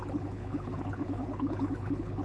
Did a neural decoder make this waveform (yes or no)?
yes